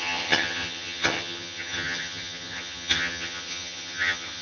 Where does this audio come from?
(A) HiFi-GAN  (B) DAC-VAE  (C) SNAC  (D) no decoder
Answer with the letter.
A